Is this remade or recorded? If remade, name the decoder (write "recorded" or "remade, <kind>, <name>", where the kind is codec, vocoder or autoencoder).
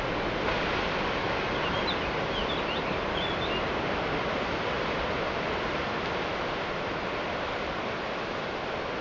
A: recorded